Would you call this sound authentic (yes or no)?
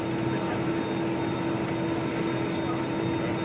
yes